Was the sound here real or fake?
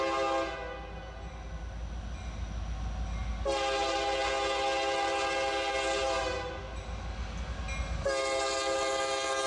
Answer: real